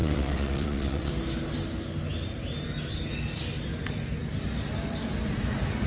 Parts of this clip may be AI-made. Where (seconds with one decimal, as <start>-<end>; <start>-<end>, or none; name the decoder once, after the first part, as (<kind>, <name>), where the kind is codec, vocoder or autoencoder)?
0.0-1.1 (vocoder, WaveNeXt)